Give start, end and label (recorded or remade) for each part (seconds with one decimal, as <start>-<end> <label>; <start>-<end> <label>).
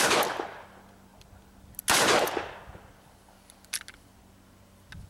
0.0-5.1 recorded